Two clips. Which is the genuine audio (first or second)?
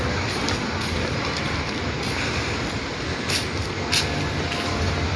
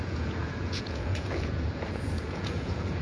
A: first